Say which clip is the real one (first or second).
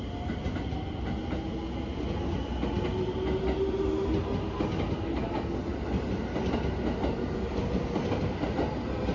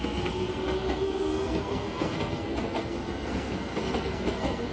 first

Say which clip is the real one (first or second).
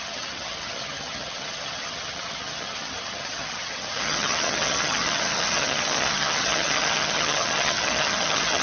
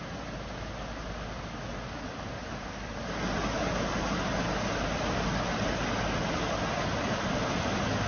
second